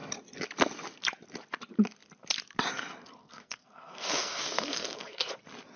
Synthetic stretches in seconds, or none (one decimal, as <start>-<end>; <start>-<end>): 3.2-5.3